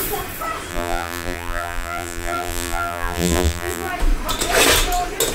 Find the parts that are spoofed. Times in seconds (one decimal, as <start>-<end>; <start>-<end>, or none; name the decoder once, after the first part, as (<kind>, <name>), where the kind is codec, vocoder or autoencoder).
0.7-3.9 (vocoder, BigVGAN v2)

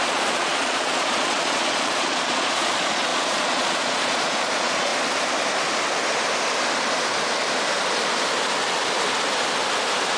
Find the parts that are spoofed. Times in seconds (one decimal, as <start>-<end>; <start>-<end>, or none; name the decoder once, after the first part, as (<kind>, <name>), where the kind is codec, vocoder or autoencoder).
0.0-4.9 (vocoder, Vocos)

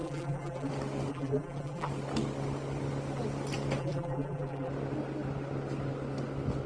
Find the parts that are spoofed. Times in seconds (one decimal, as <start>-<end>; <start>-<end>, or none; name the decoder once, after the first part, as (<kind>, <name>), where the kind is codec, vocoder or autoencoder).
0.0-0.7 (vocoder, BigVGAN v2); 1.1-1.9; 3.8-4.7